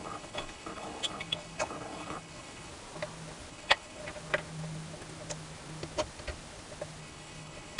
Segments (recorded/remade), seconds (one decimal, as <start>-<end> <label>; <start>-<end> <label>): 0.0-2.7 remade; 2.7-3.5 recorded; 3.5-4.0 remade; 4.0-7.0 recorded; 7.0-7.8 remade